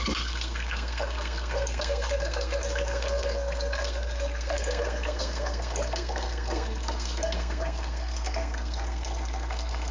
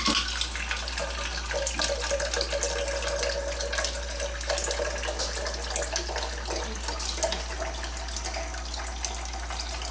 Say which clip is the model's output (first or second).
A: first